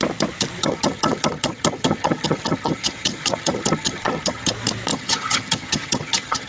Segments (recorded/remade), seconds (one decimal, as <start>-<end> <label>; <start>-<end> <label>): 0.0-0.6 recorded; 0.6-4.5 remade; 4.5-4.9 recorded; 4.9-6.5 remade